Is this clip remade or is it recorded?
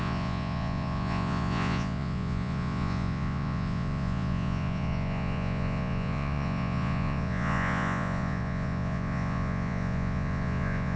remade